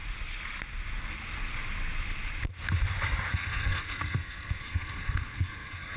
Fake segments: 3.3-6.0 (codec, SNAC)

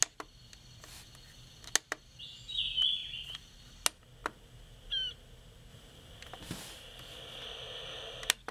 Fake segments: 3.0-3.6 (vocoder, BigVGAN v2); 5.7-6.5

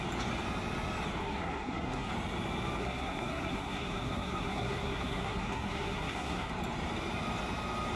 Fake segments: 1.2-2.1 (codec, SNAC); 2.8-6.5

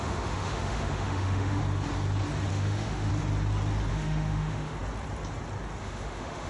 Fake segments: 0.0-1.6 (autoencoder, DAC-VAE); 2.5-3.1; 3.9-4.8; 5.8-6.5

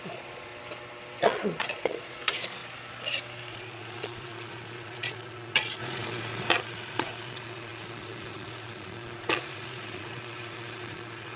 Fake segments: 0.0-0.5 (vocoder, Vocos); 1.2-2.6; 3.5-11.4

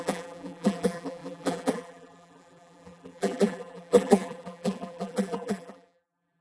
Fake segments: 0.0-6.4 (vocoder, BigVGAN v2)

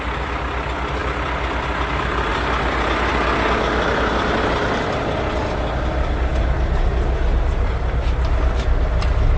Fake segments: none

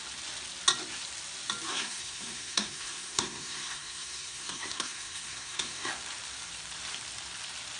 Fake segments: 1.7-5.9 (codec, SNAC)